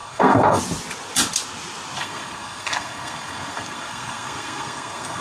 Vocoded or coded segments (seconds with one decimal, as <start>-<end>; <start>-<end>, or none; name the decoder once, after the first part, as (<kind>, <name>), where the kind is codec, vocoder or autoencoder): 0.0-0.6 (codec, SNAC); 2.0-5.2